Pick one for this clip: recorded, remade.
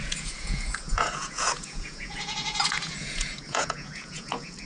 remade